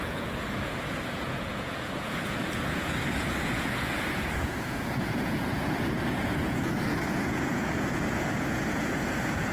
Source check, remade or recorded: remade